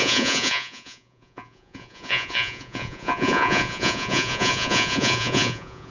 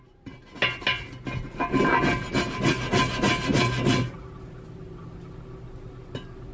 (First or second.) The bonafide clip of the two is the second